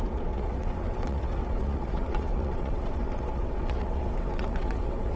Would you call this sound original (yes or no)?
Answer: no